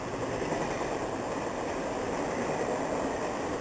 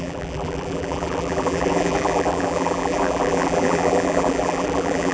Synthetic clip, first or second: second